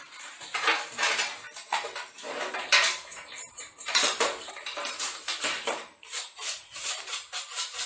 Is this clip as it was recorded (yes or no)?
no